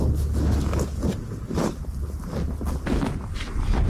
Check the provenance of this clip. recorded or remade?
recorded